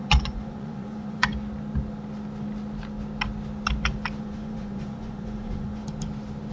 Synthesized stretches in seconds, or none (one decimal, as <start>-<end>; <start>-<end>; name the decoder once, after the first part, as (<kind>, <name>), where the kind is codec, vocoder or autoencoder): 0.0-1.3 (vocoder, Vocos); 4.2-5.8